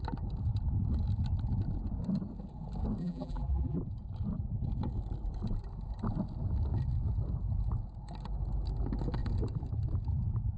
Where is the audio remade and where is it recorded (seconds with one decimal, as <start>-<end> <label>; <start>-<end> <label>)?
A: 0.0-3.0 recorded; 3.0-3.8 remade; 3.8-10.6 recorded